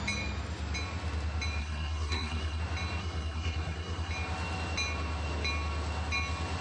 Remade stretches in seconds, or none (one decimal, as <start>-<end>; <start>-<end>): 1.6-2.6; 3.0-4.1